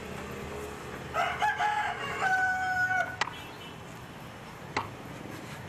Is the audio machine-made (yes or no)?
no